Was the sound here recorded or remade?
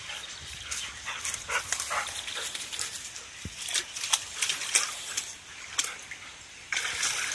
recorded